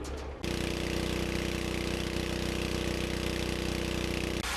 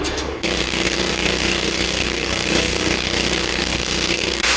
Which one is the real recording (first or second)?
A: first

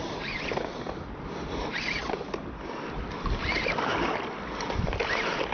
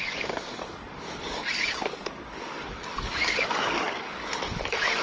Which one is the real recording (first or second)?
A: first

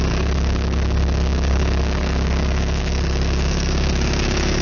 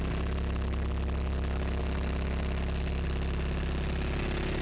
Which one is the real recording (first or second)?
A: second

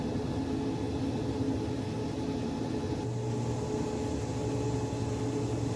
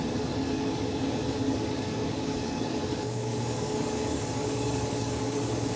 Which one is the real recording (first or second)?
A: first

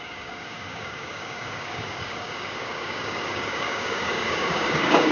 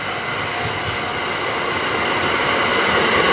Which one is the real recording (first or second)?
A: second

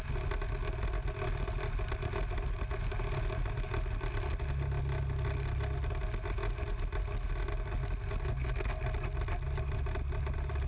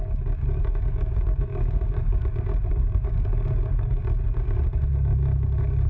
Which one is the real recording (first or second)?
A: first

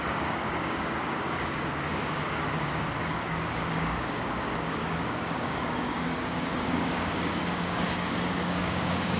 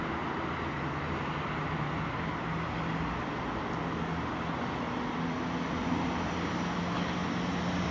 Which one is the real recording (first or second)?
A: second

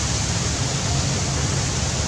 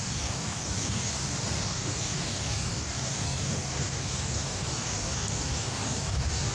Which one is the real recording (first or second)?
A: first